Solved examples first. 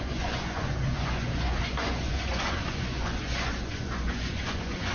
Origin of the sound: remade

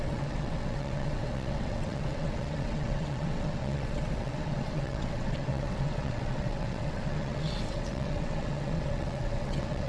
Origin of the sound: remade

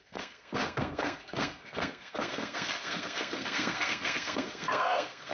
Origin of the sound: remade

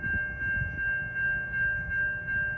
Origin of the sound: recorded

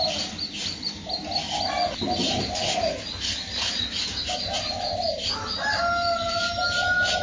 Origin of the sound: recorded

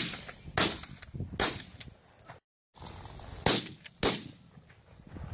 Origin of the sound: recorded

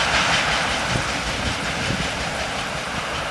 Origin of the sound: recorded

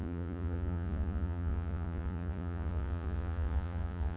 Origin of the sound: remade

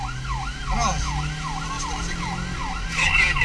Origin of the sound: recorded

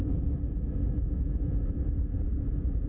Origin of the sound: remade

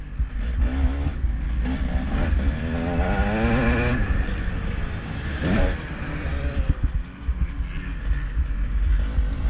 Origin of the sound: recorded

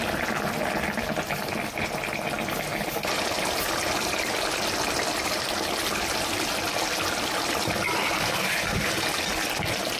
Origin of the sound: recorded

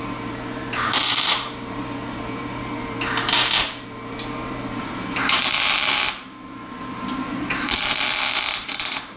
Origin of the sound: remade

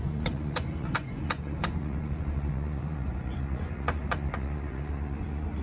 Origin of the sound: remade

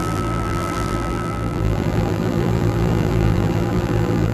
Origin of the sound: remade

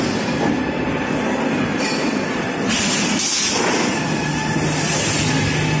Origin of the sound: recorded